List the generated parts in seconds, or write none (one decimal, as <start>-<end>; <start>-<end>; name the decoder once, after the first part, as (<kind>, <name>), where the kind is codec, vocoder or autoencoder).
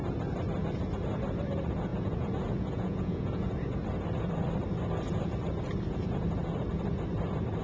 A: 1.9-3.5 (vocoder, Vocos)